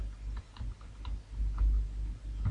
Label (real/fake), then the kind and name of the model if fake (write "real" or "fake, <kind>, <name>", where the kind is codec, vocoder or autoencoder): real